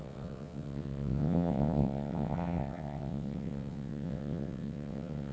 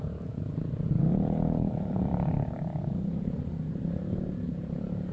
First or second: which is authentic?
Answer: second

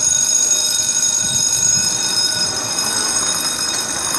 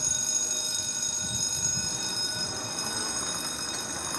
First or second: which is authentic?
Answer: second